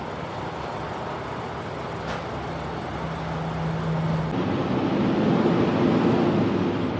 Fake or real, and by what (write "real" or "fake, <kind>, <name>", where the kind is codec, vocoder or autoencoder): real